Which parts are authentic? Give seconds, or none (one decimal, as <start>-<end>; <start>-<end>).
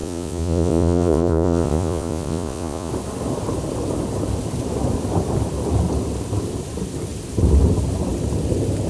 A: 2.9-8.9